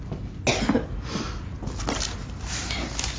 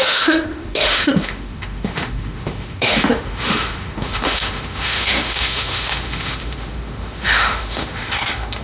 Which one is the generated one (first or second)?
second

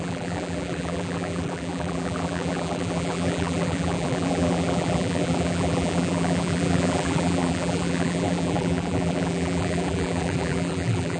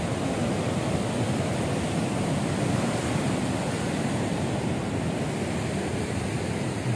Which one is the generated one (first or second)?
first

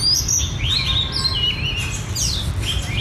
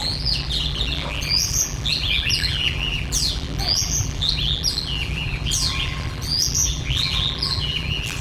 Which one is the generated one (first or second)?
second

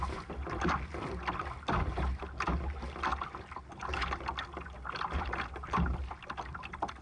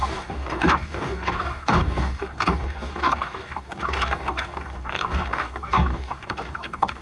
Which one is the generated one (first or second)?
second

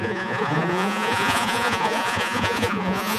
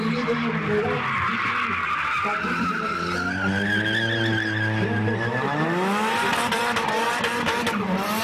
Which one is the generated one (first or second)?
first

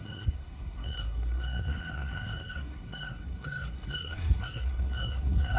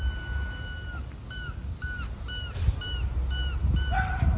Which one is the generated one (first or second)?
first